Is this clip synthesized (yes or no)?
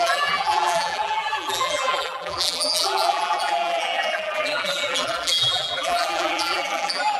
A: yes